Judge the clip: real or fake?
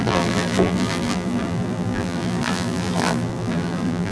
fake